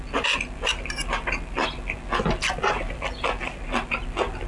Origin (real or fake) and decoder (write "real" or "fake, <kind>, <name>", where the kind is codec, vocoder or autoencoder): real